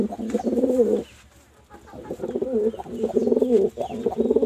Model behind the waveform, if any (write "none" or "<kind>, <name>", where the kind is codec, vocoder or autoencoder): none